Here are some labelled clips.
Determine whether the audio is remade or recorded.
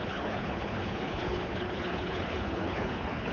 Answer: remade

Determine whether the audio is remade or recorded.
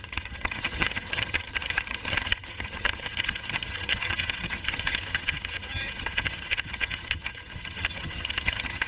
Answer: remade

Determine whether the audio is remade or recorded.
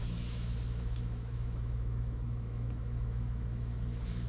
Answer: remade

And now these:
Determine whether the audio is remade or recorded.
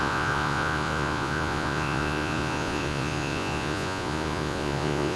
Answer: remade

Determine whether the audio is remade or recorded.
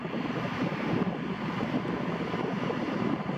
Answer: recorded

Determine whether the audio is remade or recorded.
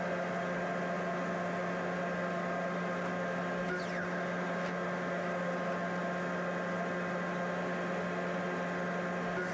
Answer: recorded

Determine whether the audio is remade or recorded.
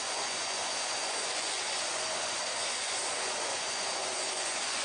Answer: remade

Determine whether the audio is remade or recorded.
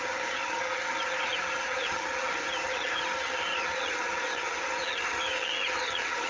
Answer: remade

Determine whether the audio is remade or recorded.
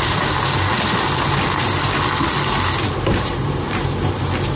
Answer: recorded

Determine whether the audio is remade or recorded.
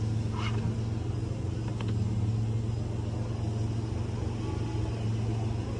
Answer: recorded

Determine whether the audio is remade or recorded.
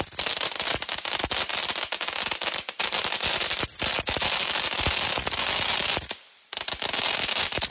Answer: recorded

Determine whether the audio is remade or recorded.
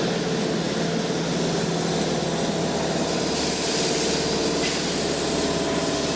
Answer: recorded